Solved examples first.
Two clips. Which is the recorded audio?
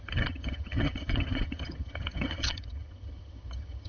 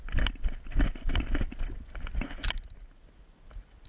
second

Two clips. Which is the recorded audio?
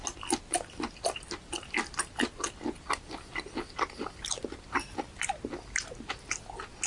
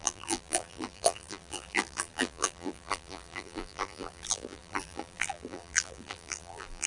first